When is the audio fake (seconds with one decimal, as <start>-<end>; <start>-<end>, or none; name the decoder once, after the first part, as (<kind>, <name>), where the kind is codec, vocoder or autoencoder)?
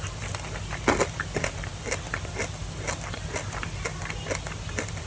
none